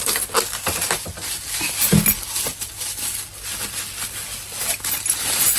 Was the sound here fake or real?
real